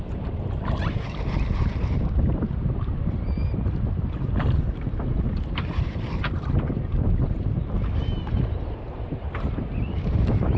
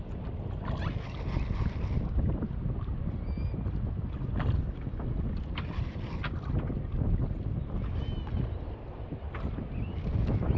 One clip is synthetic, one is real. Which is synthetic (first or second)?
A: first